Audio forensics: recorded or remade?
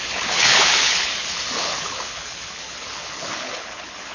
remade